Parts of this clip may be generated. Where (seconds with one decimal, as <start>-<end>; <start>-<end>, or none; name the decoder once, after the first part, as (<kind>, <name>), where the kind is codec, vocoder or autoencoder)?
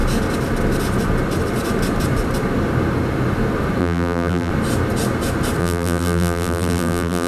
3.8-4.5 (vocoder, BigVGAN v2); 5.6-7.3